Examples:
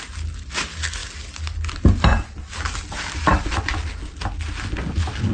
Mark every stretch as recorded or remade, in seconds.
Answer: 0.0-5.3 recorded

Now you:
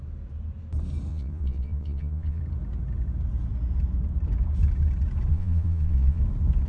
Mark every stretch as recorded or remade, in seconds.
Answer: 0.0-1.1 recorded; 1.1-2.4 remade; 2.4-5.3 recorded; 5.3-6.2 remade; 6.2-6.7 recorded

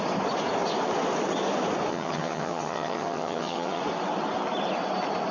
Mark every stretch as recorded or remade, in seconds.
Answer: 0.0-1.9 recorded; 1.9-3.8 remade; 3.8-5.3 recorded

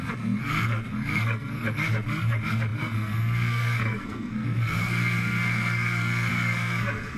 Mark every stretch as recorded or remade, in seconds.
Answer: 0.0-7.2 remade

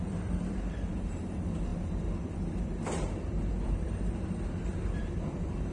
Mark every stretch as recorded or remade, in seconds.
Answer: 0.0-5.7 remade